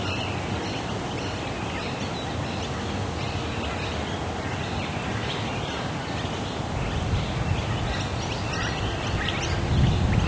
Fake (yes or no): no